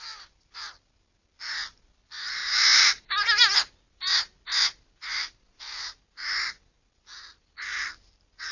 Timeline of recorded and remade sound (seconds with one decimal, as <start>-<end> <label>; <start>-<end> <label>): 0.0-2.4 remade; 2.4-6.8 recorded; 6.8-7.7 remade; 7.7-8.5 recorded